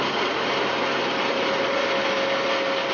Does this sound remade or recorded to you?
recorded